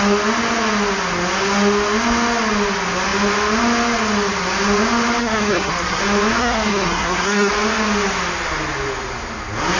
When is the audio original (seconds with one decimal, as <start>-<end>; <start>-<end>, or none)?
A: 0.0-5.2; 6.0-6.4; 7.5-9.8